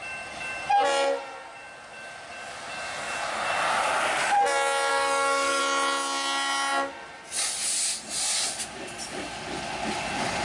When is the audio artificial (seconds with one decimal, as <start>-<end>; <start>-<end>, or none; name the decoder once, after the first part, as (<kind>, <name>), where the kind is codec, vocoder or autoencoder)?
4.9-5.6 (codec, DAC)